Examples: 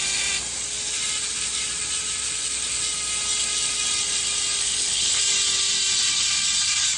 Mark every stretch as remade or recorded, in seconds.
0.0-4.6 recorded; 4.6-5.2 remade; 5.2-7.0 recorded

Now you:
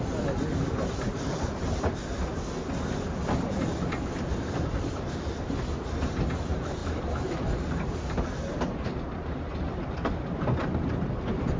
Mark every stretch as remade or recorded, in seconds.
0.0-6.8 recorded; 6.8-10.2 remade; 10.2-11.6 recorded

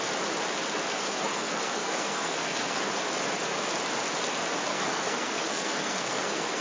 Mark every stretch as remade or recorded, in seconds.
0.0-0.9 recorded; 0.9-2.8 remade; 2.8-4.7 recorded; 4.7-6.6 remade